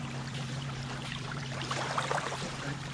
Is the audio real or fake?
fake